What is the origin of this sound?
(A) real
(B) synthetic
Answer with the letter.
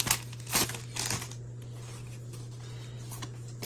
A